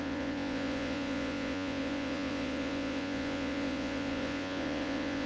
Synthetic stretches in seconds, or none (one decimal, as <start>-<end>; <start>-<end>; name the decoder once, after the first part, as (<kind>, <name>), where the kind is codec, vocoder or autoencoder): 0.0-5.3 (vocoder, Vocos)